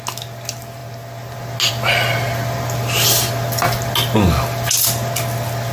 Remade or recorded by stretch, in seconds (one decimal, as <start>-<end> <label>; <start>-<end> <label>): 0.0-5.7 recorded